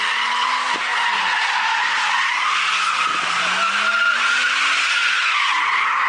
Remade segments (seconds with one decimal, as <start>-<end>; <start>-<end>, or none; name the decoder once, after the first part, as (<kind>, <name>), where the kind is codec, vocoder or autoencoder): 5.0-5.6 (vocoder, Vocos)